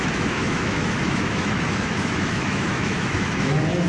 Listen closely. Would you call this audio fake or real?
fake